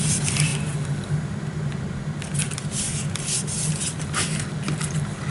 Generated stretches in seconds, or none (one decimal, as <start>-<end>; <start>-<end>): none